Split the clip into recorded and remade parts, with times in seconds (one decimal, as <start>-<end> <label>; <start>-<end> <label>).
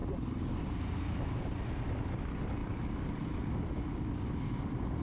0.0-5.0 recorded